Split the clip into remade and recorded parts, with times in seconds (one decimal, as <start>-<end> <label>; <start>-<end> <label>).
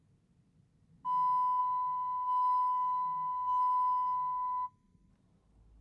0.0-1.6 recorded; 1.6-5.1 remade; 5.1-5.8 recorded